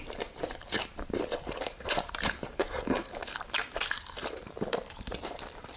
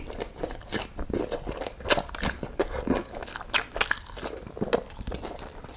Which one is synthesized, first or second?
first